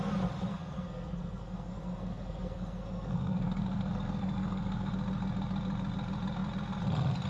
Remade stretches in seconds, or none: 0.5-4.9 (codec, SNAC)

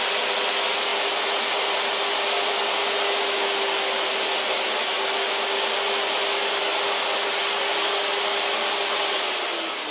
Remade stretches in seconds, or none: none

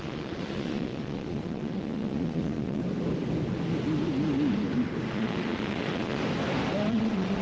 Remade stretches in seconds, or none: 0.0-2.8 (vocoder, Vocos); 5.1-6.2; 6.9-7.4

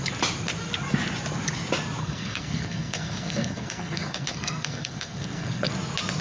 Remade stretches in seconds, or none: 2.0-5.7 (codec, SNAC)

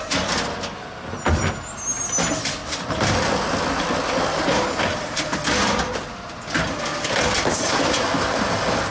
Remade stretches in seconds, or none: none